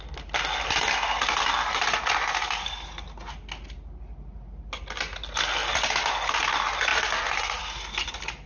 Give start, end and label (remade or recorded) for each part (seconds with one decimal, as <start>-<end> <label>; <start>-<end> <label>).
0.0-6.9 recorded; 6.9-7.6 remade; 7.6-8.5 recorded